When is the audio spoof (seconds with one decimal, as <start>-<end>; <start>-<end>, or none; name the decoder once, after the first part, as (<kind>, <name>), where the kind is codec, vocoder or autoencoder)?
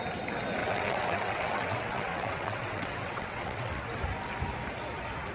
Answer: 0.6-3.8 (vocoder, WaveNeXt)